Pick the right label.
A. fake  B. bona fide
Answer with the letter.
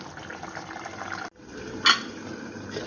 B